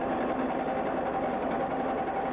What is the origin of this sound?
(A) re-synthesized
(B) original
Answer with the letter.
B